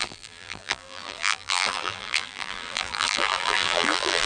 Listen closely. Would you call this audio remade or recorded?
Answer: remade